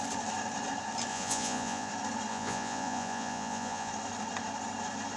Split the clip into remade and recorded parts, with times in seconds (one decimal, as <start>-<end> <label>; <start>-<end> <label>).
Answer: 0.0-1.1 recorded; 1.1-1.9 remade; 1.9-2.3 recorded; 2.3-3.9 remade; 3.9-5.2 recorded